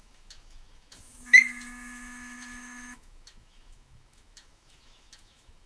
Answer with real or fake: fake